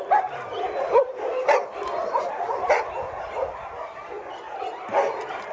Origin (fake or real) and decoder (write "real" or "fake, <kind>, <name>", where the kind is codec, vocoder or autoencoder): real